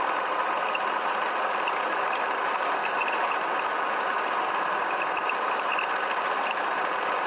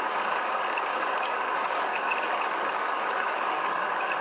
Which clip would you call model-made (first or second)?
second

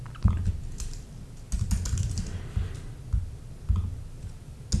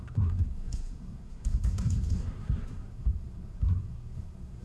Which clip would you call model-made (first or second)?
second